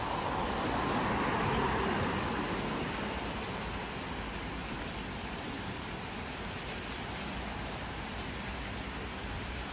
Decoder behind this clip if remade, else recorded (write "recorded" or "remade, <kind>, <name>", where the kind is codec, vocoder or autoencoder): recorded